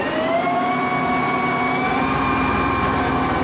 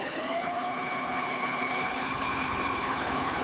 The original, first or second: first